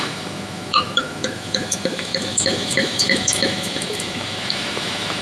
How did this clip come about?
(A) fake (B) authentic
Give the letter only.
A